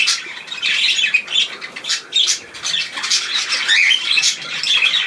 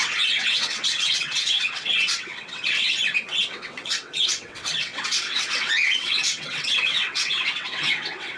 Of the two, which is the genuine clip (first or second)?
first